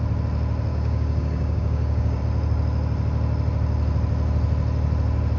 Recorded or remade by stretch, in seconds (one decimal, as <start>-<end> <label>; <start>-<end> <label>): 0.0-0.7 recorded; 0.7-2.2 remade; 2.2-5.4 recorded